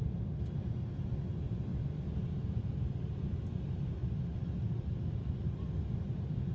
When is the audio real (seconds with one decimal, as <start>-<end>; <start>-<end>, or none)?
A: 0.0-4.0; 5.7-6.5